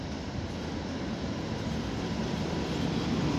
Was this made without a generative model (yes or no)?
yes